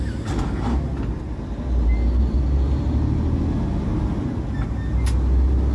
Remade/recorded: recorded